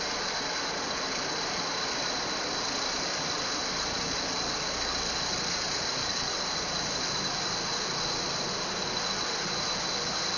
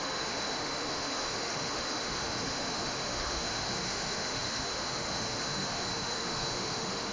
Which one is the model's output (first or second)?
second